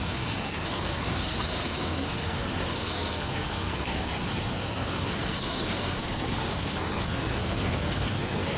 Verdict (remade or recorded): remade